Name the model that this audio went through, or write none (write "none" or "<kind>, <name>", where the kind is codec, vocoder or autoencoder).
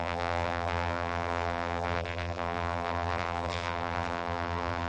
vocoder, BigVGAN v2